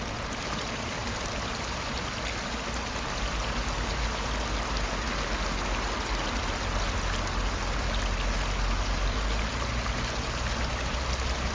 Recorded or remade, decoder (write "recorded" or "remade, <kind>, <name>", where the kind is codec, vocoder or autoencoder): recorded